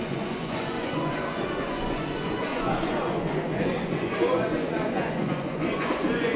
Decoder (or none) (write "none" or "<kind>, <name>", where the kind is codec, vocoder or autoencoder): vocoder, Vocos